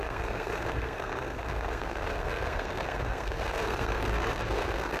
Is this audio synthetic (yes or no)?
yes